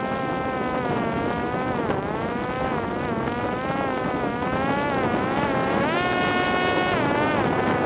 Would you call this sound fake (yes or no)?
no